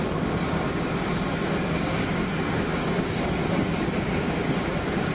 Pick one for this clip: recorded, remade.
remade